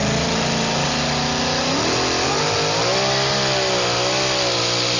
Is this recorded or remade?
recorded